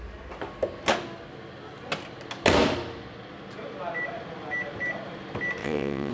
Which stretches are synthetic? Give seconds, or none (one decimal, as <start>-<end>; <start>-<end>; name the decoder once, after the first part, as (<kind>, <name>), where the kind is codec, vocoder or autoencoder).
5.6-6.1 (vocoder, WaveNeXt)